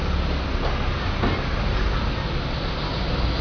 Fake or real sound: real